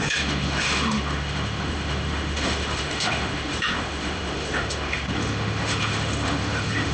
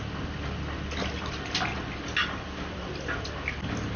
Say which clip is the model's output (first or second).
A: first